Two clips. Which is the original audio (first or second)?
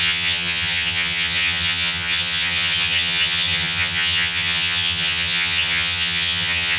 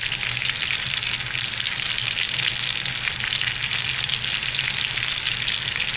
second